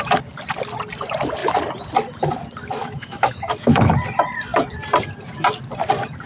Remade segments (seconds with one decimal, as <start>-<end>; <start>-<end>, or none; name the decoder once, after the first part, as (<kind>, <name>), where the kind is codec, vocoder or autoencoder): 2.8-3.9 (autoencoder, DAC-VAE)